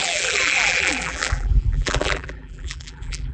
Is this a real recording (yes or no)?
no